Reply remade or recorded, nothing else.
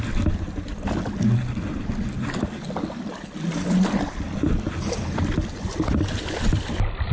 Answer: recorded